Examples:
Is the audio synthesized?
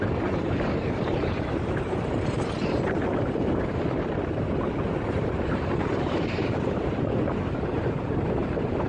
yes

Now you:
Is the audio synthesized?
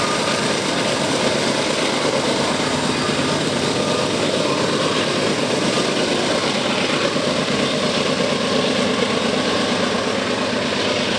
yes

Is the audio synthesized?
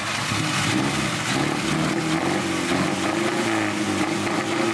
no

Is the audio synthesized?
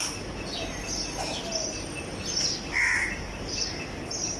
no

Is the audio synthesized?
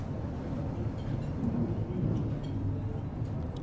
no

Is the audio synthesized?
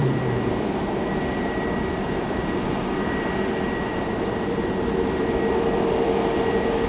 yes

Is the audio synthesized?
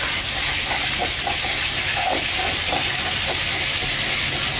no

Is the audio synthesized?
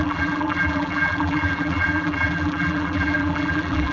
yes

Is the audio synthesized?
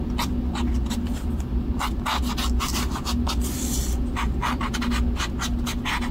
no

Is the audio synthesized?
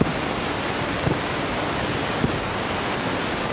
no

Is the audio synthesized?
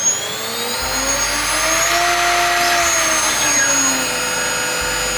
no